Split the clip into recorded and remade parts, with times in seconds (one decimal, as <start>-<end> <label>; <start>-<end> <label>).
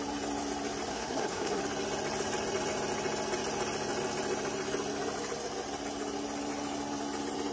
0.0-0.9 recorded; 0.9-1.6 remade; 1.6-7.5 recorded